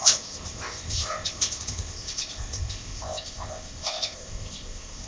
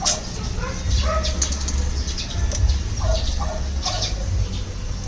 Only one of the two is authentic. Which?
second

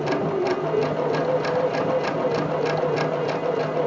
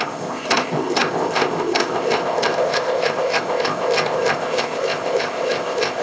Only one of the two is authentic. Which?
first